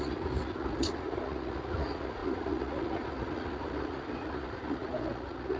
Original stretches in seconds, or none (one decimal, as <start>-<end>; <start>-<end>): none

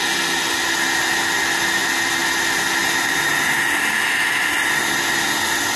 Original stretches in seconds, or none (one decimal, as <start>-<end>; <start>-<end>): 0.0-5.8

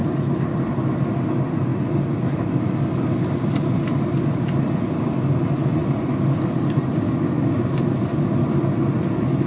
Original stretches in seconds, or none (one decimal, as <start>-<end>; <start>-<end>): 0.0-9.5

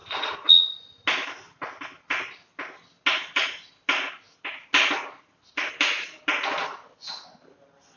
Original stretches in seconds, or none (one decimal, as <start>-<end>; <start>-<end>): 0.7-8.0

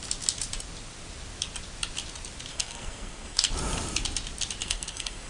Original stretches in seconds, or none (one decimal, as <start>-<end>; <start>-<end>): 0.0-2.5; 3.5-4.6

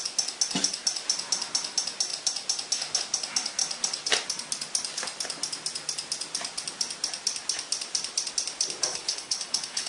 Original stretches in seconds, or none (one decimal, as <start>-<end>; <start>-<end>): 0.0-8.9

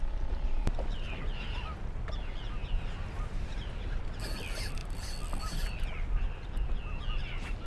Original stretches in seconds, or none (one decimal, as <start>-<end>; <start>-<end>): 0.0-7.7

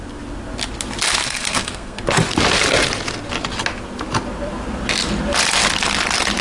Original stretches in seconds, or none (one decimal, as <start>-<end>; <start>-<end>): 0.0-1.2; 2.0-6.4